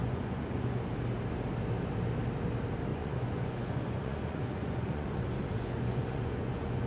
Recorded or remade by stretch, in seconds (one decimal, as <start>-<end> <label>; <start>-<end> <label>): 0.0-0.8 remade; 0.8-2.9 recorded; 2.9-6.9 remade